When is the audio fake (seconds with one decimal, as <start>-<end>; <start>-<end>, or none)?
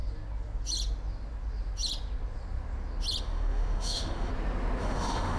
3.2-4.3; 4.8-5.4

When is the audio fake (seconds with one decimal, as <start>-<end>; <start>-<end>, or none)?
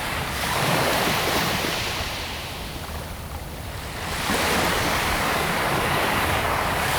0.0-0.9; 4.7-7.0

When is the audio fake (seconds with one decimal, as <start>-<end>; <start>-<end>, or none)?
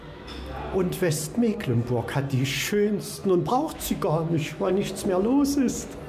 3.2-4.7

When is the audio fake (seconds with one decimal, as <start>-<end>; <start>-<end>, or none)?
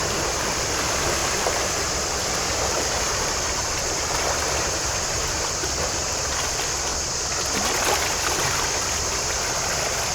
1.2-6.2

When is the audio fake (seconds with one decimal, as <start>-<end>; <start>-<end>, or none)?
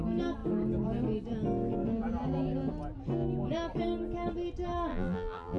4.9-5.6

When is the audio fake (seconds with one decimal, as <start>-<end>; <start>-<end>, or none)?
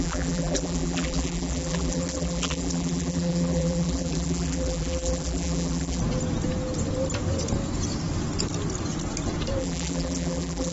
0.0-6.0; 9.6-10.7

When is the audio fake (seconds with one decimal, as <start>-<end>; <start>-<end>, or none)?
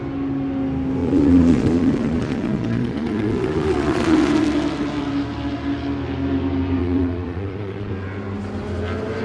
1.0-4.3; 6.8-7.9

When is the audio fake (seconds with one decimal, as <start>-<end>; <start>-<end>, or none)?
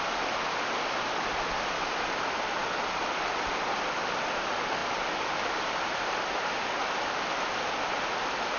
none